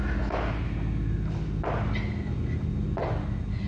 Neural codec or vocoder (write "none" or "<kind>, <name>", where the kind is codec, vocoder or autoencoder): none